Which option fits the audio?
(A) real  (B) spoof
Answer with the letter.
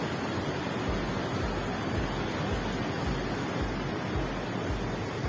A